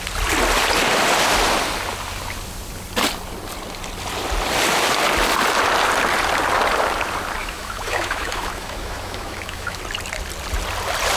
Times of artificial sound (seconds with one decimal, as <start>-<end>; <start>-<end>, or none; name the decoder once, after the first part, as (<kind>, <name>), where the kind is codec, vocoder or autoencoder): 7.4-9.8 (autoencoder, DAC-VAE)